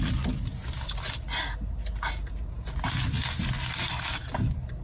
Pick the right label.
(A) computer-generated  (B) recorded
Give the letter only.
B